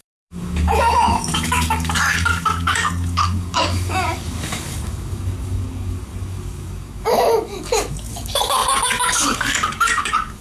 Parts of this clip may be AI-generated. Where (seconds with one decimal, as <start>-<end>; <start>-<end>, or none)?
0.0-10.4